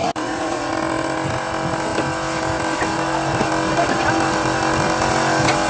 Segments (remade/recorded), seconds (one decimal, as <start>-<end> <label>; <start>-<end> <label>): 0.0-0.7 remade; 0.7-5.7 recorded